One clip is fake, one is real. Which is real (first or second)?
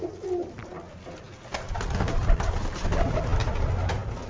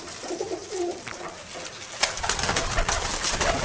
first